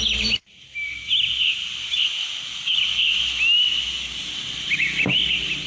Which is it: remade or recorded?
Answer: recorded